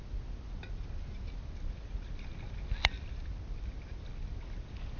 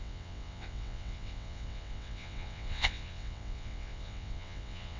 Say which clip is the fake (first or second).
second